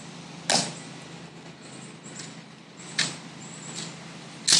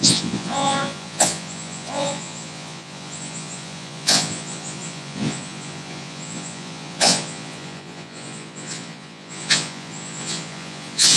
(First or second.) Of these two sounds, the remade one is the second